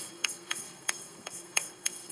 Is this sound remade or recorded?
remade